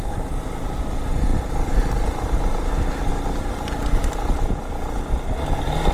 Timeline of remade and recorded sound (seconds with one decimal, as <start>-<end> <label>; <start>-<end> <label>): 0.0-5.9 recorded